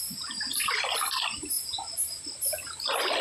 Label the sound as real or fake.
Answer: real